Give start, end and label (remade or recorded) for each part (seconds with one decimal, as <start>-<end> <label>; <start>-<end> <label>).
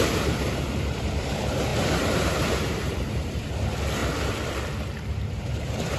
0.0-4.0 remade; 4.0-5.4 recorded; 5.4-6.0 remade